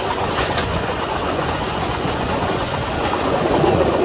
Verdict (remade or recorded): remade